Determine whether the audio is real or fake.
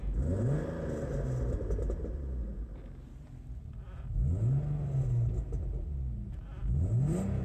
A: real